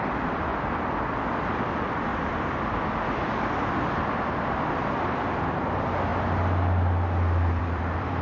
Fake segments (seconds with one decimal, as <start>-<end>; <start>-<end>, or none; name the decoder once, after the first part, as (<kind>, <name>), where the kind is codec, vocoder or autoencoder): 0.0-0.5 (vocoder, BigVGAN v2); 1.6-2.1; 4.7-6.1; 7.6-8.2